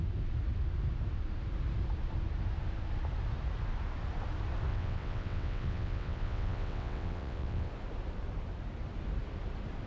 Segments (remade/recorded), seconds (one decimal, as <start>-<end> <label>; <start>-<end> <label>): 0.0-4.7 recorded; 4.7-7.7 remade; 7.7-9.9 recorded